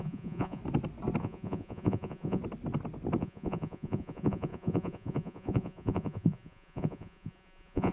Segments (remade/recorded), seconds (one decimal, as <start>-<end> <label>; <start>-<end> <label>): 0.0-0.6 remade; 0.6-1.2 recorded; 1.2-2.4 remade; 2.4-3.2 recorded; 3.2-7.9 remade